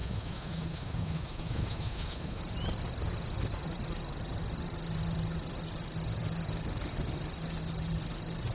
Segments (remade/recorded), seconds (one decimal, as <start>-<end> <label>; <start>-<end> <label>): 0.0-2.4 remade; 2.4-8.5 recorded